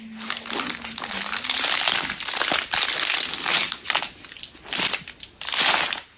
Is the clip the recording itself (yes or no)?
yes